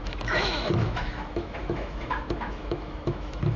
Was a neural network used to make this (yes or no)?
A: yes